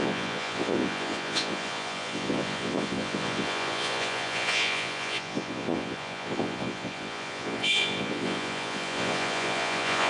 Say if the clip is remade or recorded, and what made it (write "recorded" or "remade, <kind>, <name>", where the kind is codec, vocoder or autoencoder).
remade, vocoder, Vocos